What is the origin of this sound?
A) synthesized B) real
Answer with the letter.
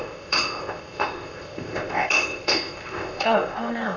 A